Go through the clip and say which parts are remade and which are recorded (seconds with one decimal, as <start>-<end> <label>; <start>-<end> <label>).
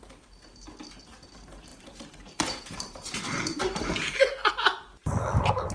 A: 0.0-1.7 recorded; 1.7-4.5 remade; 4.5-5.7 recorded